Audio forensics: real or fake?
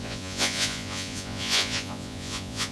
fake